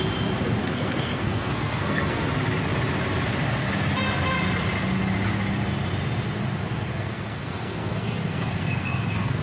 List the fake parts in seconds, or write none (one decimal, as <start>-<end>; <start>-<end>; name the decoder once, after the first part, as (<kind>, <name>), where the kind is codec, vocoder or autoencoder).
0.6-2.2 (codec, SNAC); 6.9-9.4